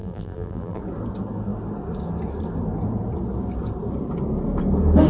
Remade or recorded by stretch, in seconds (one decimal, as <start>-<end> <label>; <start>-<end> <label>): 0.0-0.8 remade; 0.8-5.1 recorded